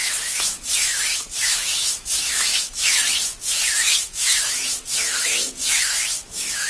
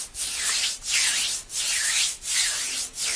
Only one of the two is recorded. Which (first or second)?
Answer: second